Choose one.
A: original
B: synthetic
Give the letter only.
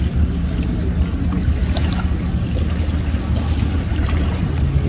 A